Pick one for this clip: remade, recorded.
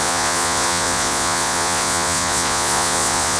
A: remade